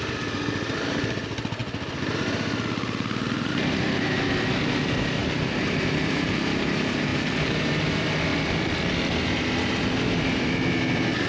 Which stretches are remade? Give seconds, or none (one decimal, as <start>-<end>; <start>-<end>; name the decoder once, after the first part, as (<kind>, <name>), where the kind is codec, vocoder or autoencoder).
7.1-7.7 (vocoder, BigVGAN v2)